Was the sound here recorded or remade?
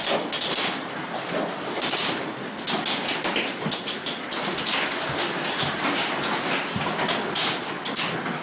recorded